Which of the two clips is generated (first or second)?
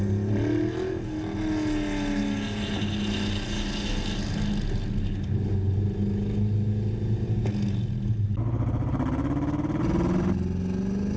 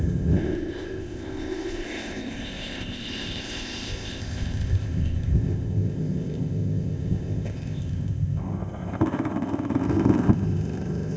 second